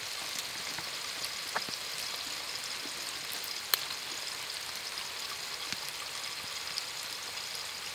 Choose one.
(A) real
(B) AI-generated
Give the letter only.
A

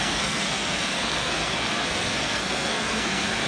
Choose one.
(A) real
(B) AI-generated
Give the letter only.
B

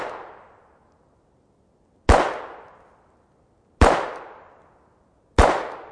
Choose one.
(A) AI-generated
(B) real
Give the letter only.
B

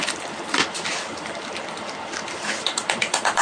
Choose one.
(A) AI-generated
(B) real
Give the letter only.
A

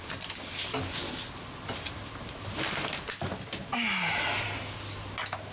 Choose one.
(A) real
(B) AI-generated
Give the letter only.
A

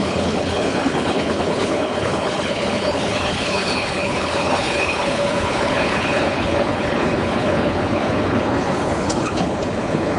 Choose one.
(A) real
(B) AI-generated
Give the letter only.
B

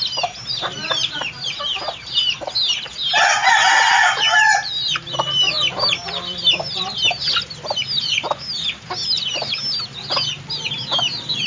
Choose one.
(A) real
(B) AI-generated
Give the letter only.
A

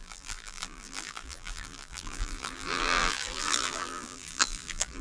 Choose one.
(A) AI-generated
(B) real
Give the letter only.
A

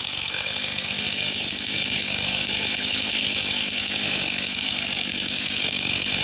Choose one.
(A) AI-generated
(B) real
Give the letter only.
A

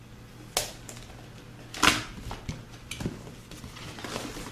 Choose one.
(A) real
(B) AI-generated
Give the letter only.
A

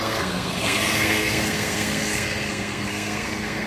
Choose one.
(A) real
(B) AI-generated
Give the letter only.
B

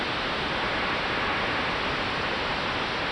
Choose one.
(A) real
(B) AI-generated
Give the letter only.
A